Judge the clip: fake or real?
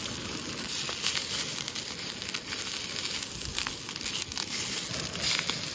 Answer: real